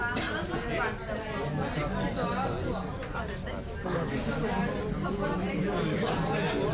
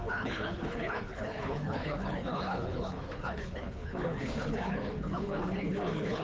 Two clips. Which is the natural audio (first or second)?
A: first